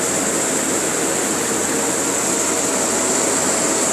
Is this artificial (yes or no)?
no